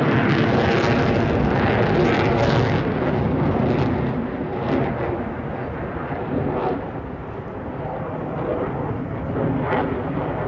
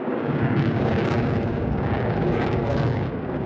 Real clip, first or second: first